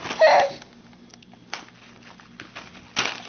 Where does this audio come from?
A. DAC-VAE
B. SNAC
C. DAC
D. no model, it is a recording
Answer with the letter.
D